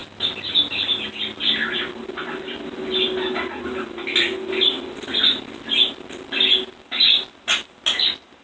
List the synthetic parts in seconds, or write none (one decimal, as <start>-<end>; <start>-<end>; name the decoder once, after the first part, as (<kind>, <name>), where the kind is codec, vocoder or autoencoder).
none